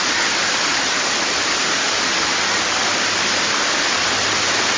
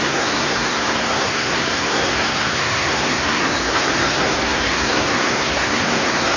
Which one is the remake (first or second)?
second